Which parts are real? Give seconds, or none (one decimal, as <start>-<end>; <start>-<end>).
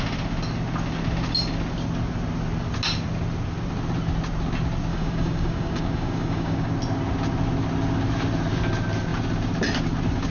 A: 0.0-4.9; 6.7-10.3